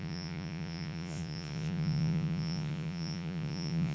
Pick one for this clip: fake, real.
fake